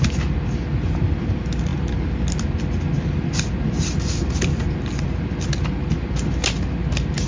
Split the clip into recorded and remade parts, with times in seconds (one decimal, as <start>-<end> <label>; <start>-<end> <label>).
0.0-7.3 recorded